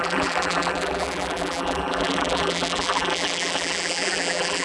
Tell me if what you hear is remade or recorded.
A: remade